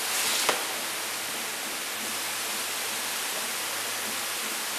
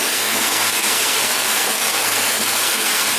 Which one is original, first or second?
first